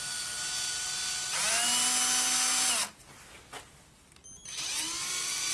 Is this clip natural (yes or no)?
yes